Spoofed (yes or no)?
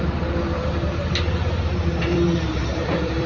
yes